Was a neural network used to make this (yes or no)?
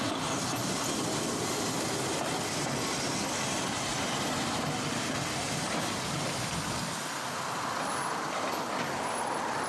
no